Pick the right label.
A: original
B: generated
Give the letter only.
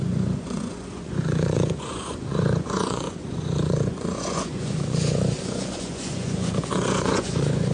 B